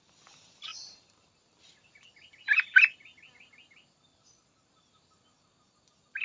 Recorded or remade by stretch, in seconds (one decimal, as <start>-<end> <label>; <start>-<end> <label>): 0.0-6.2 recorded